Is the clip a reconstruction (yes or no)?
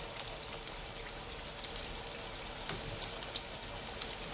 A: no